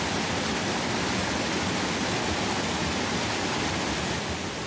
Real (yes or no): yes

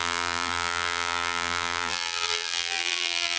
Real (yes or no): no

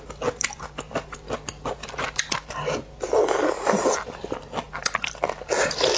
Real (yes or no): no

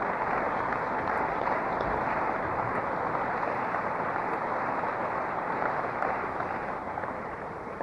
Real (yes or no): no